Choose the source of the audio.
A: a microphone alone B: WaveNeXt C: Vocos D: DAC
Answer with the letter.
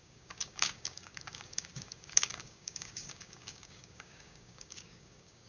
D